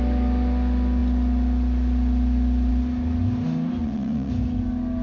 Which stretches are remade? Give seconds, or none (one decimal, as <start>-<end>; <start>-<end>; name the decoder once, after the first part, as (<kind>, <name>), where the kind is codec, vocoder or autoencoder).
3.8-4.3 (vocoder, Vocos)